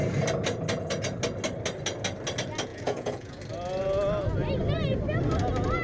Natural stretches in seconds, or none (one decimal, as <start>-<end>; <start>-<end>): 0.0-2.7; 3.4-5.8